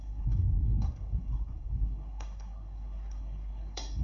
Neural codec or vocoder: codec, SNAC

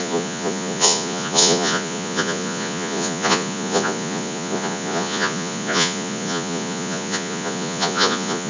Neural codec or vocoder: vocoder, Vocos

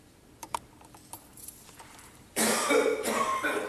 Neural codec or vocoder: vocoder, BigVGAN v2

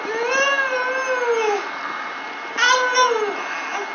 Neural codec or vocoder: none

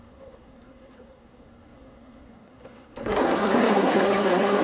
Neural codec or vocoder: codec, SNAC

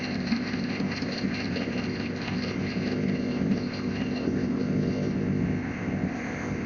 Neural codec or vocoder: codec, ZipCodec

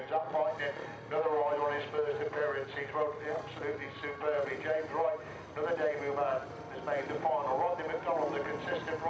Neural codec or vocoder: none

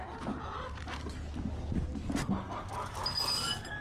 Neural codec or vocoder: none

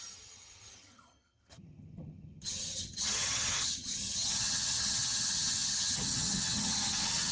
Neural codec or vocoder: vocoder, HiFi-GAN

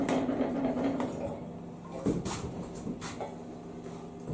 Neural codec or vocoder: none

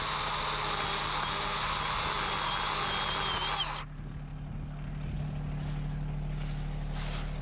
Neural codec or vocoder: none